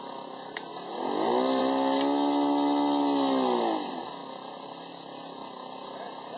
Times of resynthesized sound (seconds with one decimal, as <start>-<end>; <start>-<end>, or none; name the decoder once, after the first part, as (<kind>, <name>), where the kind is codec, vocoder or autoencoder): none